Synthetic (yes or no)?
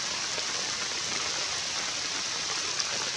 no